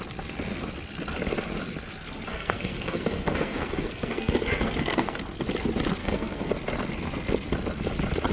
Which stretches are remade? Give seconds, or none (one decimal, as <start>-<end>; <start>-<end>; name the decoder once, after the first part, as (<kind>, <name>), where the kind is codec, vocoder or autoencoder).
2.3-5.2 (codec, SNAC); 6.0-6.5